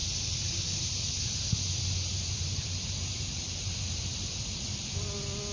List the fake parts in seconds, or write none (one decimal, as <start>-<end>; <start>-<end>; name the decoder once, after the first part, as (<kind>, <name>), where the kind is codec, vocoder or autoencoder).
0.0-0.9 (vocoder, BigVGAN v2); 2.1-3.6